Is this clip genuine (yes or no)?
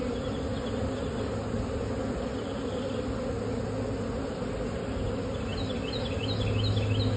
yes